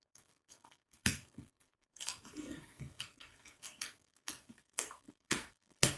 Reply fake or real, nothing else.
fake